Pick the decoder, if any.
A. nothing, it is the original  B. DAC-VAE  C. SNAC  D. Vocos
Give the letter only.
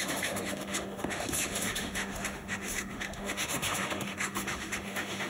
B